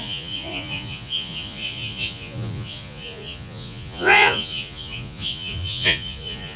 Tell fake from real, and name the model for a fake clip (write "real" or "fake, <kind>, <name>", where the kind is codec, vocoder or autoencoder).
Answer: fake, vocoder, Vocos